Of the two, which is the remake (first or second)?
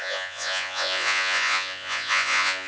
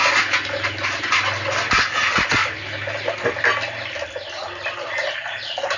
first